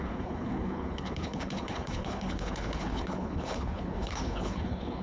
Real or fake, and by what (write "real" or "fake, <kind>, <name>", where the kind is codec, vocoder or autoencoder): fake, codec, HILCodec